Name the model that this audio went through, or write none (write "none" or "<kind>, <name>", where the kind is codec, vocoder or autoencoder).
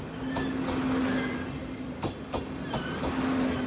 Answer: none